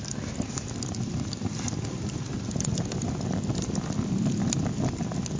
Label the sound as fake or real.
real